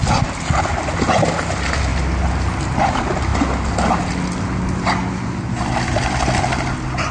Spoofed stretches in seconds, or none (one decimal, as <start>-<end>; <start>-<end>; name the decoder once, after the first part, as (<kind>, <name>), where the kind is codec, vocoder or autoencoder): none